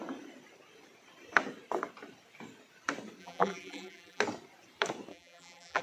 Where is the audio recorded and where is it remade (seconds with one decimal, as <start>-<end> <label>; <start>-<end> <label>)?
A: 0.0-3.2 recorded; 3.2-4.2 remade; 4.2-5.1 recorded; 5.1-5.8 remade